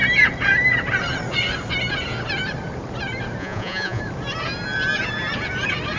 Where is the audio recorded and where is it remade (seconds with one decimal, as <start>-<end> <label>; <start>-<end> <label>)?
0.0-3.4 recorded; 3.4-4.0 remade; 4.0-6.0 recorded